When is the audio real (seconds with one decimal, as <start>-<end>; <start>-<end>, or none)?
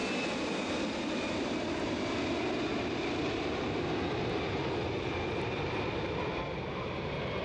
0.0-7.4